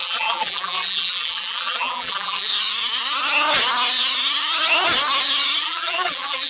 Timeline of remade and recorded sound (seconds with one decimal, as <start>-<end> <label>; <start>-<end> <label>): 0.0-2.5 remade; 2.5-5.6 recorded; 5.6-6.5 remade